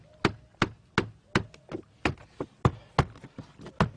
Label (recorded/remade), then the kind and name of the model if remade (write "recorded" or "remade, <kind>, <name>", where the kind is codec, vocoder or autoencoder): recorded